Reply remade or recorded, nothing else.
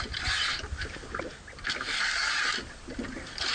recorded